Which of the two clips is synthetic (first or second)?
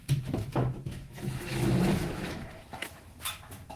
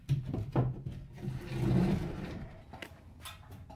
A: first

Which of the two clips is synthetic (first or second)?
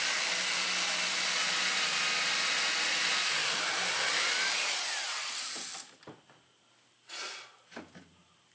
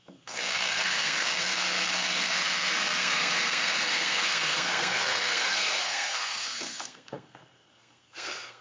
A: second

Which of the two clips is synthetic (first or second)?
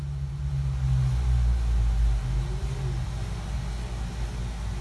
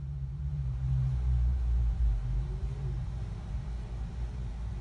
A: second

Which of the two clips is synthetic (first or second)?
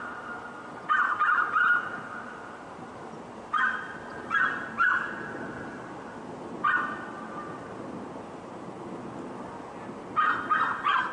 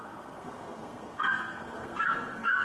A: second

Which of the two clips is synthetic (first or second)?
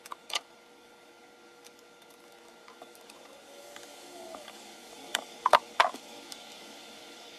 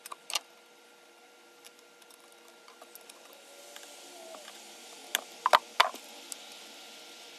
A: first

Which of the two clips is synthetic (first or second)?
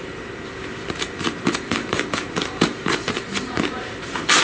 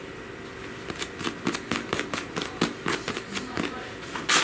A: first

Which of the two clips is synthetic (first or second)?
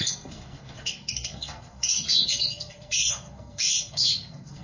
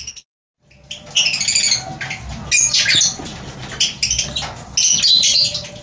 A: first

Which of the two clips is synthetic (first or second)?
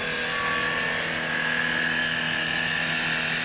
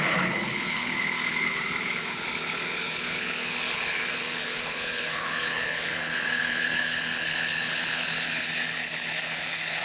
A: second